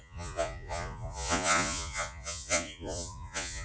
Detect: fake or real fake